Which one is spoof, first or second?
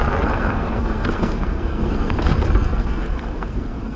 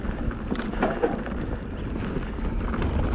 first